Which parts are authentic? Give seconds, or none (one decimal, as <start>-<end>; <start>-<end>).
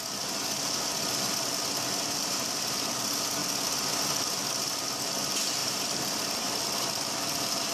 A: 0.0-5.6; 6.5-7.7